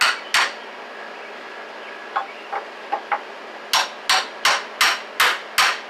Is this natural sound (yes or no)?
yes